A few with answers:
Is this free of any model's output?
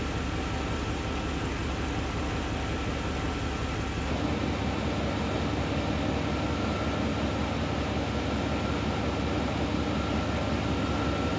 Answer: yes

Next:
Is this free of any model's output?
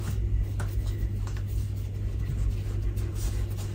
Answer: yes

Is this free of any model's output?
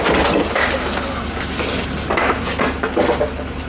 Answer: yes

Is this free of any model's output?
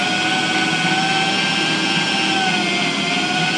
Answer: yes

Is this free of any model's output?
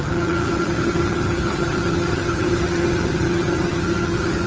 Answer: no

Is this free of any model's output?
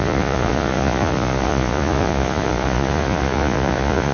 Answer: no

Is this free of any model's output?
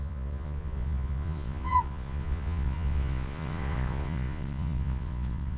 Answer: no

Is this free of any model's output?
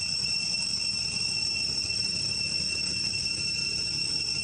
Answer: yes